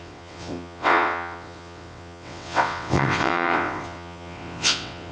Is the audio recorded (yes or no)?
no